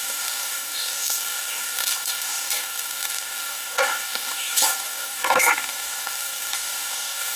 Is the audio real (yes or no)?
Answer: no